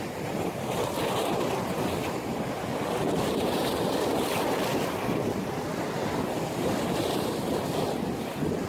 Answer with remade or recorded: recorded